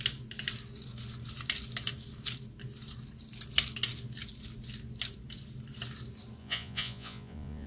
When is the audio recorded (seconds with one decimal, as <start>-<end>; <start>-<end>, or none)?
0.0-6.4